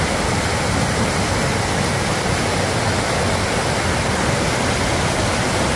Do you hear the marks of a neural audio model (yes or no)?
no